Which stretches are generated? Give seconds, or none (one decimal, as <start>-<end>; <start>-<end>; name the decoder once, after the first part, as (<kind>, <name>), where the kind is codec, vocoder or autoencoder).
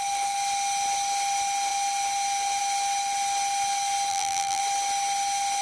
4.1-4.6 (vocoder, BigVGAN v2)